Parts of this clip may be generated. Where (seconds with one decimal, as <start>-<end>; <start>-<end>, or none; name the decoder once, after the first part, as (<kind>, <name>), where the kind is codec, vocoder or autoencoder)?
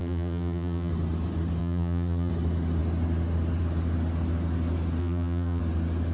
0.0-0.9 (vocoder, BigVGAN v2); 1.6-2.3; 5.0-5.6